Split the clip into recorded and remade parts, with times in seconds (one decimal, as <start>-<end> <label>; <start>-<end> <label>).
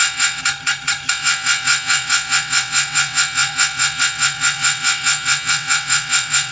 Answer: 0.0-0.4 remade; 0.4-1.1 recorded; 1.1-6.5 remade